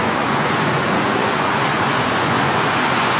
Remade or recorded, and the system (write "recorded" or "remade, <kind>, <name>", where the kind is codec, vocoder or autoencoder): remade, vocoder, Vocos